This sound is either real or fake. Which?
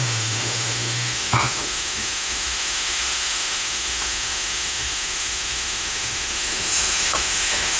fake